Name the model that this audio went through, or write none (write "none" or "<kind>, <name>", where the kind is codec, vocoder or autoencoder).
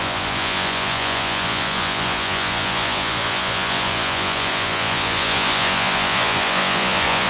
vocoder, Vocos